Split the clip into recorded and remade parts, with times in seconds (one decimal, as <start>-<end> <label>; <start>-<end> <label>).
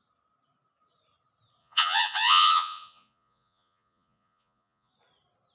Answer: 0.0-1.6 recorded; 1.6-4.9 remade; 4.9-5.5 recorded